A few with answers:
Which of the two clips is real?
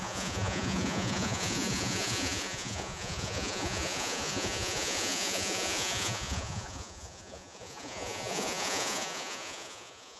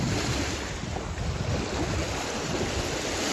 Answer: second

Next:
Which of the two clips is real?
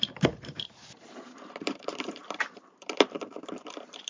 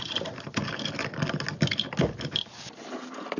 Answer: second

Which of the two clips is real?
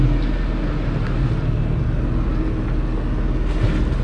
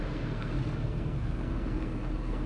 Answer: first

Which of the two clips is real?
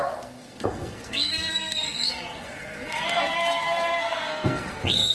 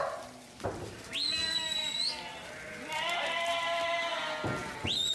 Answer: second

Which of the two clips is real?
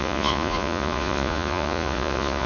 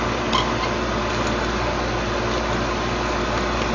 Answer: second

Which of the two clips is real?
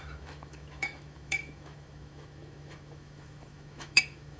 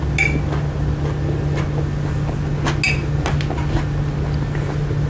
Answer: second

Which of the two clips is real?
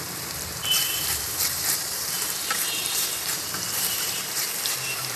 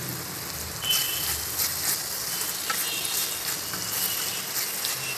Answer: second